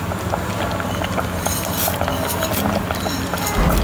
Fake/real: real